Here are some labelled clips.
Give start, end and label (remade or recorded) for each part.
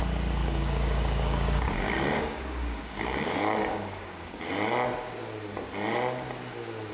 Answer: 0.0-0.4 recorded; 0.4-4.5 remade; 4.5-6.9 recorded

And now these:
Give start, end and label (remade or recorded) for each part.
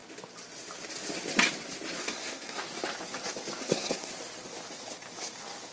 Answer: 0.0-2.0 recorded; 2.0-2.6 remade; 2.6-3.6 recorded; 3.6-4.1 remade; 4.1-5.7 recorded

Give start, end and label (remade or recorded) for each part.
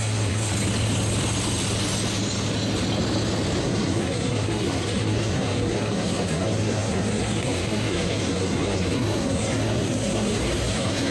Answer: 0.0-0.5 remade; 0.5-3.6 recorded; 3.6-11.1 remade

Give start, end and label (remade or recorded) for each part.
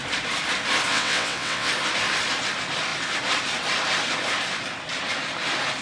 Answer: 0.0-0.9 recorded; 0.9-1.7 remade; 1.7-5.8 recorded